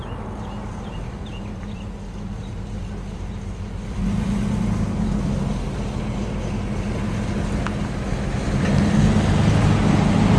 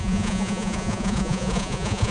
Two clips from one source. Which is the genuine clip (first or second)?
first